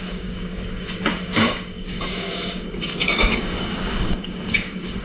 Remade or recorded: remade